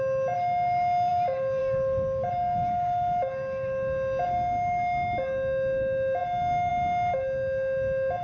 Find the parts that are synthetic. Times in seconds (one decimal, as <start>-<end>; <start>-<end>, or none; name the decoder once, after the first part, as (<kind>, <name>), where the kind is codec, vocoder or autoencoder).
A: none